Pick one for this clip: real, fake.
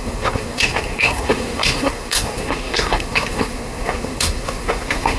fake